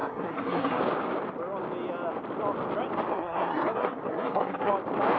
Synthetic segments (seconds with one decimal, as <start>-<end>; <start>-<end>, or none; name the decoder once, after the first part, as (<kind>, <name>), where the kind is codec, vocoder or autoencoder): 0.0-0.8 (codec, SNAC); 3.1-4.7